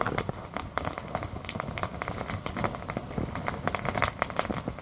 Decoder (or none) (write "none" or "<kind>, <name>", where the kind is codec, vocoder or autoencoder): none